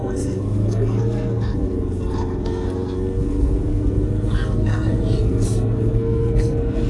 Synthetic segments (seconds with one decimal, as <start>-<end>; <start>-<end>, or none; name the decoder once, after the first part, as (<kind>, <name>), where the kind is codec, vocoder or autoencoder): 0.0-6.9 (codec, SNAC)